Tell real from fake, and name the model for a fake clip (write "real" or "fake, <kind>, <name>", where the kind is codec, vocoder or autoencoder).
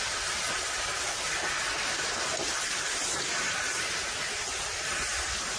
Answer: fake, vocoder, BigVGAN v2